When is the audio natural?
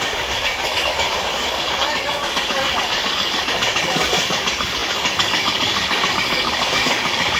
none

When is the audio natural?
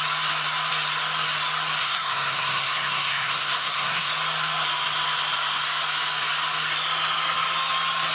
0.0-1.8; 4.1-8.1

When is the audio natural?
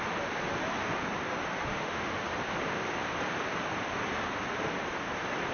0.0-1.7; 2.3-5.5